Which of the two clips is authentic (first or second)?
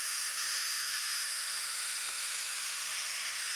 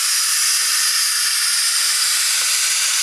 second